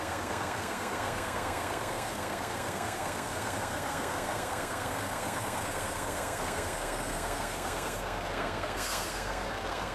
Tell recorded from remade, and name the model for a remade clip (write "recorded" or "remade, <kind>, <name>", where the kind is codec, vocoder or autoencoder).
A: remade, codec, SNAC